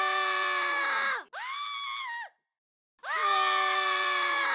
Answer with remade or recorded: recorded